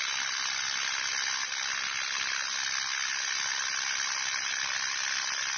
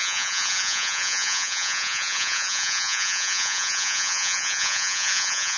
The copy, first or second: second